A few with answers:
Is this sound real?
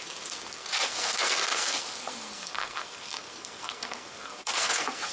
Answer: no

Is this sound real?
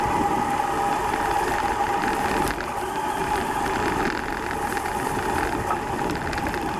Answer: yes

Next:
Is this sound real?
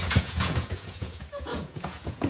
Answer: no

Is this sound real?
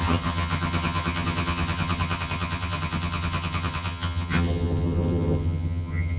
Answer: no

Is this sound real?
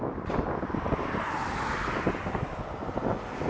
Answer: yes